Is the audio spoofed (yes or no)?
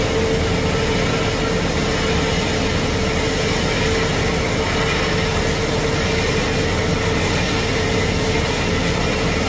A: no